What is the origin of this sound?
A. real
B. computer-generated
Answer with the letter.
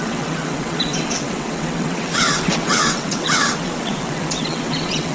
B